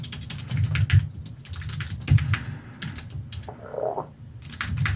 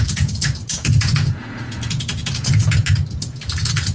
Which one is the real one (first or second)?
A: first